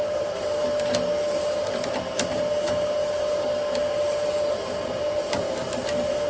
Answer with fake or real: fake